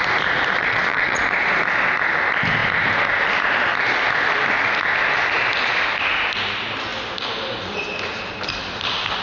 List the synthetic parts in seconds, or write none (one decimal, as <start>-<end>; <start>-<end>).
0.6-1.2